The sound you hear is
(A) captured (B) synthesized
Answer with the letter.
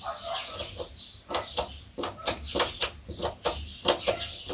A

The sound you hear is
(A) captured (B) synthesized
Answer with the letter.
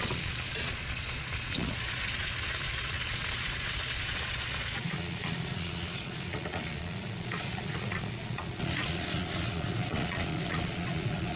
B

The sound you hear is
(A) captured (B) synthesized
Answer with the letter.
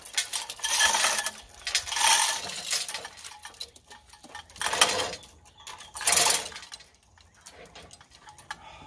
A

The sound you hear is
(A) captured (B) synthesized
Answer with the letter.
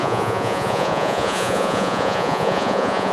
B